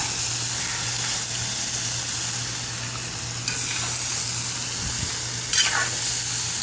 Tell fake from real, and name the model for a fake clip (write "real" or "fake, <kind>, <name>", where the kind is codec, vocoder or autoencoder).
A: real